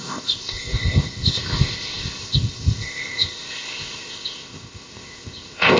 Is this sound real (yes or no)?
no